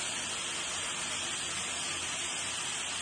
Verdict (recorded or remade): recorded